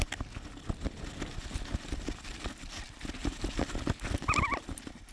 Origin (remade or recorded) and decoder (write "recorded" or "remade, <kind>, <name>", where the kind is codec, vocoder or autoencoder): recorded